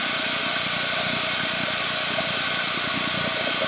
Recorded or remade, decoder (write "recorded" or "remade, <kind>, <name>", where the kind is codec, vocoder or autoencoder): recorded